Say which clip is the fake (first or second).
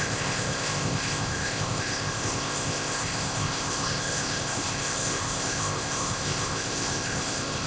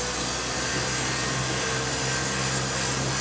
first